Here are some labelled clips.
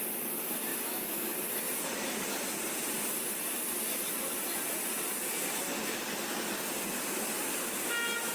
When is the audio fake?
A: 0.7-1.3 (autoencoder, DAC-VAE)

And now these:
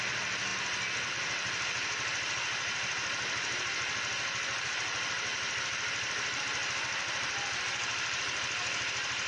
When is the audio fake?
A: none

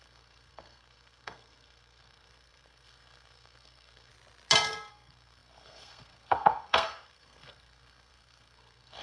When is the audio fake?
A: 0.0-4.1 (codec, SNAC); 4.9-9.0

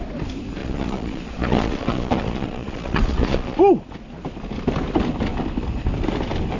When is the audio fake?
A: 0.6-3.6 (vocoder, Vocos)

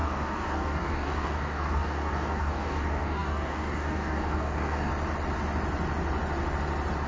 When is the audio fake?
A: 0.0-4.9 (codec, DAC)